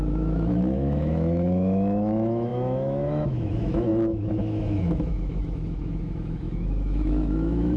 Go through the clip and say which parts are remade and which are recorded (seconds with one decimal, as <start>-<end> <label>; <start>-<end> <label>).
0.0-7.8 remade